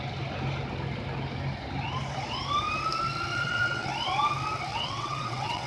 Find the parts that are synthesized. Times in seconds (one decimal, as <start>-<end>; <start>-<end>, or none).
3.3-3.9; 4.7-5.7